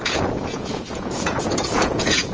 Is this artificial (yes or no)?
yes